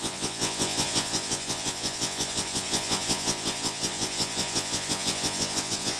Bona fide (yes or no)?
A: no